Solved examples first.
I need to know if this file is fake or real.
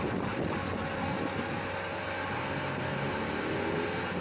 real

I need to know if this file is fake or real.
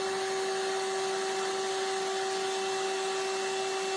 real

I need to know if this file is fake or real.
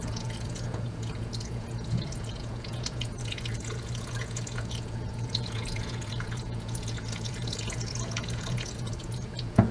fake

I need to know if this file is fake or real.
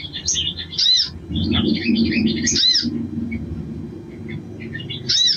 real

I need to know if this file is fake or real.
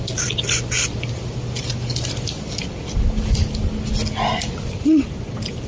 real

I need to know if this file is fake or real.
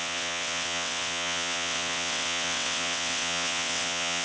fake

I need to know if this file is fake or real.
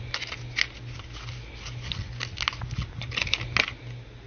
real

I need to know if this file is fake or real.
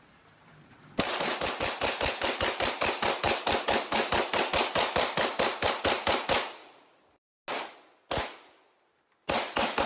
real